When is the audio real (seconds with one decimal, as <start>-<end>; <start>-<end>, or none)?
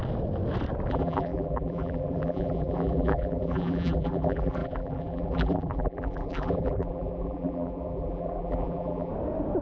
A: 0.0-0.9; 9.1-9.6